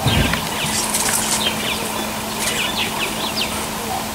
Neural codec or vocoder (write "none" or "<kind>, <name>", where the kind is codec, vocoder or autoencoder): none